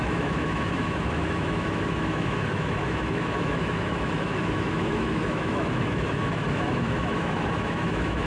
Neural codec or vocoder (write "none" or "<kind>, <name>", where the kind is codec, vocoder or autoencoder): autoencoder, DAC-VAE